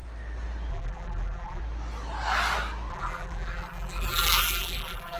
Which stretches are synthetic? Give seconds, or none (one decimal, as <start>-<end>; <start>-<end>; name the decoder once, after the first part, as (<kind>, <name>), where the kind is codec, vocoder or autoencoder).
0.7-1.6 (vocoder, BigVGAN v2); 2.9-5.2